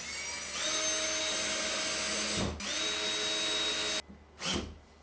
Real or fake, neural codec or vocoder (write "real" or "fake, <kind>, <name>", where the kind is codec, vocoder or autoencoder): real